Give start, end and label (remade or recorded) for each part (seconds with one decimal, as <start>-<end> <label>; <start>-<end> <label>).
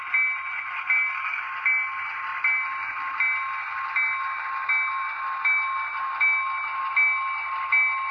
0.0-8.1 recorded